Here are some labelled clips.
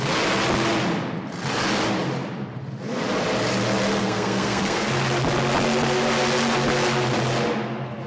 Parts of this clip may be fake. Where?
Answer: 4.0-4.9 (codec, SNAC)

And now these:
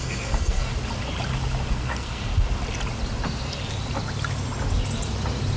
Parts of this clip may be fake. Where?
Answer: 0.0-0.7 (codec, SNAC); 1.7-2.3

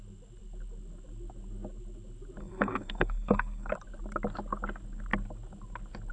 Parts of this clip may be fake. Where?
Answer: 2.4-3.7 (codec, SNAC)

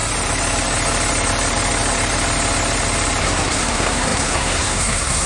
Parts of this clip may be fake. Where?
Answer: 3.2-5.3 (codec, SNAC)

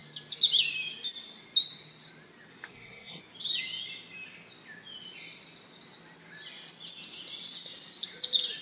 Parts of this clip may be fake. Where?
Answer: 2.5-3.2 (codec, SNAC)

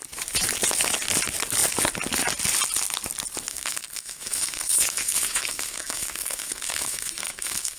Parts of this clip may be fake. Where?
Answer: 3.5-7.8 (codec, SNAC)

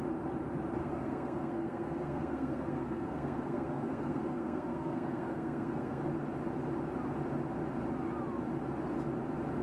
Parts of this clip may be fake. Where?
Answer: 0.8-6.0 (codec, SNAC)